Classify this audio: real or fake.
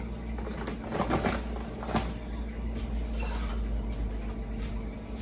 real